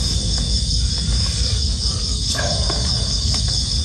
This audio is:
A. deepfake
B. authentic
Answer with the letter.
A